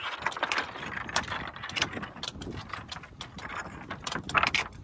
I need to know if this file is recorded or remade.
recorded